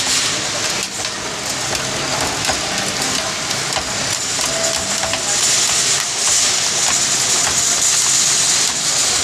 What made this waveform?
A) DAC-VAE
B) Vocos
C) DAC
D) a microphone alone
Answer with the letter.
D